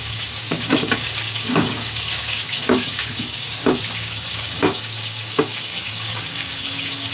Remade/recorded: remade